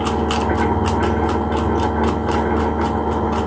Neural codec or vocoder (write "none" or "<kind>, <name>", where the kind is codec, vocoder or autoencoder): none